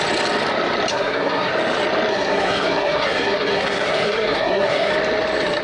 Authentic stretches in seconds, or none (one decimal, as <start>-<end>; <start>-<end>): 0.0-0.9; 1.5-2.1; 4.9-5.6